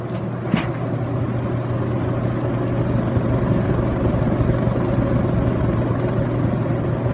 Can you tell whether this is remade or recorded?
recorded